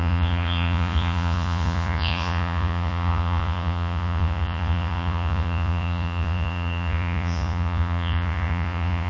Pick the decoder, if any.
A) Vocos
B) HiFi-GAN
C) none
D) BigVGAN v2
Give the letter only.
A